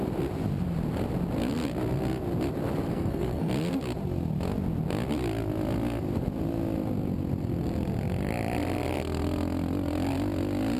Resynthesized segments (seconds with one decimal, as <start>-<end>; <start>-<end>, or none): 2.9-3.5